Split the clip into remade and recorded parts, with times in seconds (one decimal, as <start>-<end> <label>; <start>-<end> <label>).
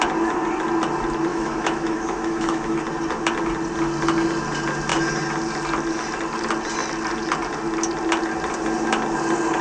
0.0-1.3 recorded; 1.3-2.8 remade; 2.8-9.6 recorded